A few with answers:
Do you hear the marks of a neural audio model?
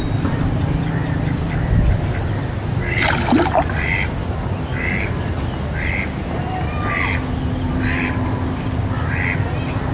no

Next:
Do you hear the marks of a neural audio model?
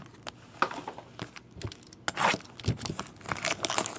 no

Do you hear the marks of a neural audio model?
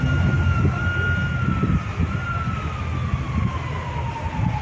no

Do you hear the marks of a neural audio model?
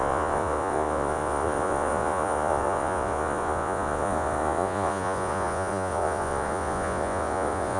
yes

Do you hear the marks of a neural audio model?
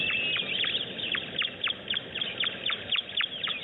no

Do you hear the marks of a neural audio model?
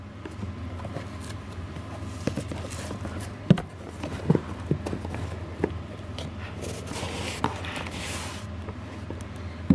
no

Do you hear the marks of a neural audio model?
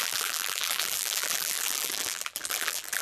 yes